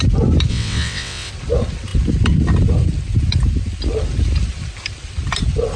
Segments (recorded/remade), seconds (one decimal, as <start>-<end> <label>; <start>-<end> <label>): 0.0-0.5 recorded; 0.5-1.3 remade; 1.3-5.8 recorded

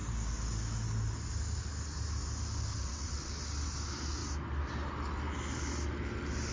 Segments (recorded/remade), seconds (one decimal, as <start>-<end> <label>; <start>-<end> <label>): 0.0-2.7 recorded; 2.7-3.3 remade; 3.3-6.5 recorded

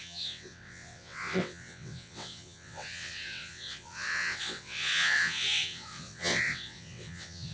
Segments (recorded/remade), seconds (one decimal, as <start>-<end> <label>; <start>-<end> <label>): 0.0-7.5 remade

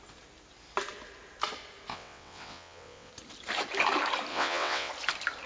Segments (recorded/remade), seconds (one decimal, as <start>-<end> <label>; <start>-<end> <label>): 0.0-1.9 recorded; 1.9-3.1 remade; 3.1-4.3 recorded; 4.3-4.9 remade; 4.9-5.5 recorded

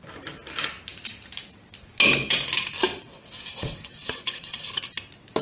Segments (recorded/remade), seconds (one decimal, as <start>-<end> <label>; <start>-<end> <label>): 0.0-2.9 recorded; 2.9-4.7 remade; 4.7-5.4 recorded